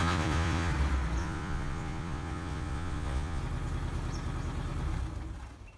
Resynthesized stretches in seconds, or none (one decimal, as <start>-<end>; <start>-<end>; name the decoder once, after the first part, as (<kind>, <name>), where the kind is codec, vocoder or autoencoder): 0.0-0.7 (vocoder, Vocos); 1.2-3.4